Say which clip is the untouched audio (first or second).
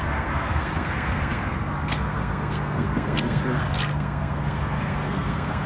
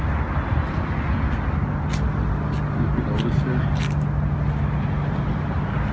second